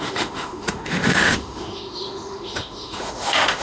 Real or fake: fake